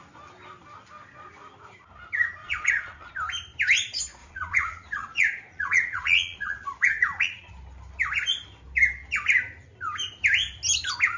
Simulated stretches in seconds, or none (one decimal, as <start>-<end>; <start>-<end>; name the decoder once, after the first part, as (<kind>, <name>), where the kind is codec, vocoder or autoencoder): 2.4-3.1 (vocoder, Vocos); 4.2-7.5